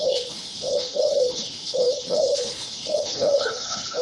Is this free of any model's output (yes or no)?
no